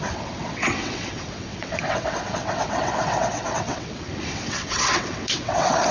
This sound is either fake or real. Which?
fake